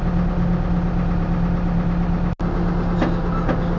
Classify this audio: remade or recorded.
recorded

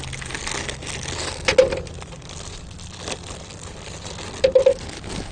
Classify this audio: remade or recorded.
recorded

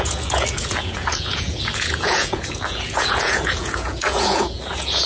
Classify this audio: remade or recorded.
remade